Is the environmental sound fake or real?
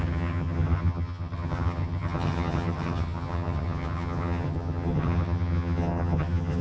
fake